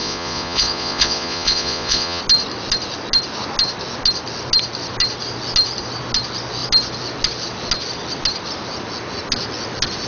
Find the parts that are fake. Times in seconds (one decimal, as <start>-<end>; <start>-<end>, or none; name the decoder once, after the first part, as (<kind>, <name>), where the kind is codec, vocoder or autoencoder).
0.0-2.2 (vocoder, Vocos)

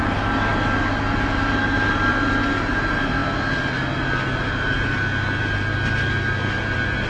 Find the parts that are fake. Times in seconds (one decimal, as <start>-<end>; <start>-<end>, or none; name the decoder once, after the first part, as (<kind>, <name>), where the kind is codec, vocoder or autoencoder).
none

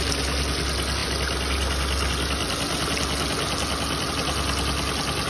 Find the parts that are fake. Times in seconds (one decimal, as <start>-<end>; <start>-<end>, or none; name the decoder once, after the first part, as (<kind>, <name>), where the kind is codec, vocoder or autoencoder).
none